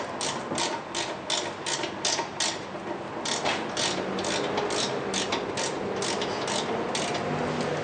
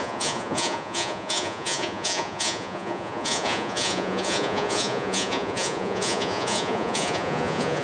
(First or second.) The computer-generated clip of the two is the second